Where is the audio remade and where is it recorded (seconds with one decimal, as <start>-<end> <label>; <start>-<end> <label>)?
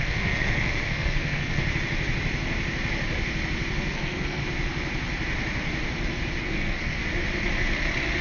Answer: 0.0-1.6 remade; 1.6-3.9 recorded; 3.9-4.4 remade; 4.4-6.4 recorded; 6.4-7.0 remade; 7.0-8.2 recorded